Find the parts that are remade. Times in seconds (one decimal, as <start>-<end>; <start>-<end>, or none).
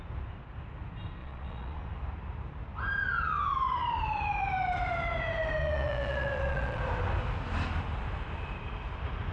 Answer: 1.2-1.8; 5.6-6.8